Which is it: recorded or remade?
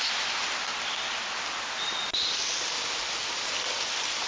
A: recorded